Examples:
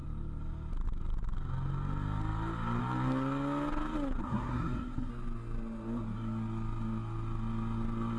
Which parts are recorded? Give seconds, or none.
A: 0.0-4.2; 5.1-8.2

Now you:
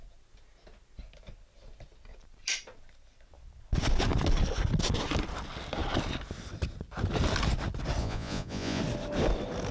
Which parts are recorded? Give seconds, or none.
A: 0.0-8.0; 8.8-9.7

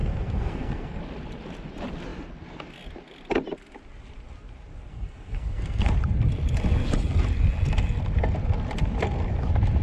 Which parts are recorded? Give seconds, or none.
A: 1.0-4.9; 5.9-9.8

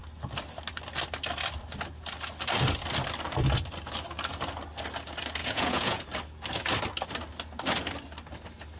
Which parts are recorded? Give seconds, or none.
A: 0.0-5.4; 6.0-8.8

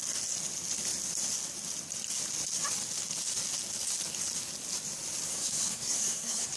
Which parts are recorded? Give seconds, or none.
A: 0.0-5.3

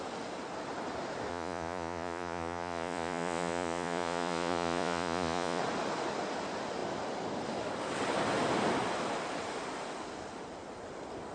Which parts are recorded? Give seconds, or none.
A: 0.0-1.3; 5.6-11.3

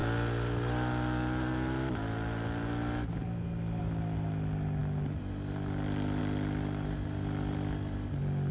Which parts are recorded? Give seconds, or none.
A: 0.0-8.5